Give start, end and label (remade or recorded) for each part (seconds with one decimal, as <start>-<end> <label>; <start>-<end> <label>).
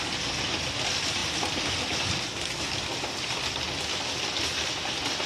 0.0-5.3 recorded